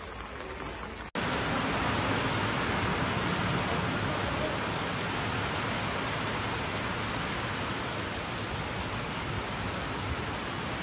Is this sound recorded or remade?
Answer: recorded